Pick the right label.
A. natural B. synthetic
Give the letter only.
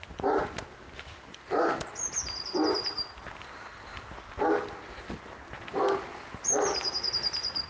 A